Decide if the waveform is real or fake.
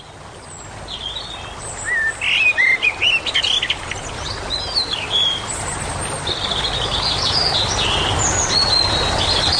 real